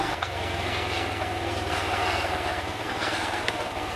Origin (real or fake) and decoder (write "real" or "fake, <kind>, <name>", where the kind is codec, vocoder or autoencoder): fake, codec, SNAC